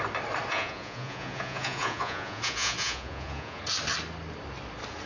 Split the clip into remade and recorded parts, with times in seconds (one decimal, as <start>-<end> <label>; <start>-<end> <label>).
0.0-0.5 recorded; 0.5-3.6 remade; 3.6-5.1 recorded